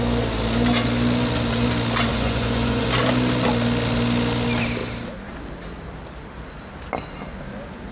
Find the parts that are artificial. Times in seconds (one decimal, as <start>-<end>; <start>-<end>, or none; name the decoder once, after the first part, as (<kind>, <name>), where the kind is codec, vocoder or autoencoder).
2.1-2.9 (vocoder, Vocos)